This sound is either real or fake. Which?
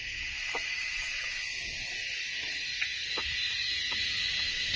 real